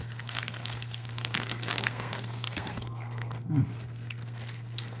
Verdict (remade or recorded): remade